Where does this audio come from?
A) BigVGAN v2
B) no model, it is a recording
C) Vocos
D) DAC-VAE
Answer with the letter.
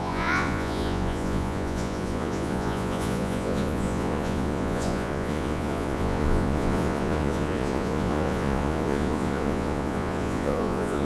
C